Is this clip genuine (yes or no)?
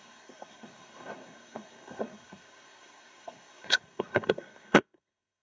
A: no